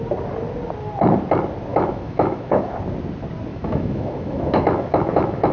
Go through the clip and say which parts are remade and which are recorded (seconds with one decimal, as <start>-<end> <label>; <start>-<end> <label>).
0.0-1.7 recorded; 1.7-2.7 remade; 2.7-3.5 recorded; 3.5-5.5 remade